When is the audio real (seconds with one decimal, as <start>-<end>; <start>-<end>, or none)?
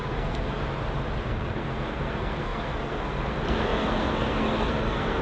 0.6-1.2